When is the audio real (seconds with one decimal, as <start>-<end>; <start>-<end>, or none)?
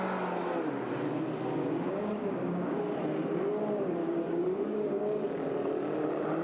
0.0-1.6; 2.8-4.0; 5.0-6.4